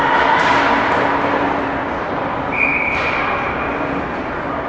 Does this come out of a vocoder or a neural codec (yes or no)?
yes